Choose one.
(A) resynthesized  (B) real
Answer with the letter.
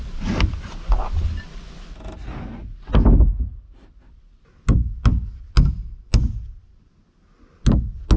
B